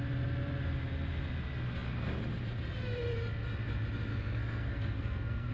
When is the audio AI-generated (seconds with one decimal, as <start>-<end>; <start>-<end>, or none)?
4.1-5.5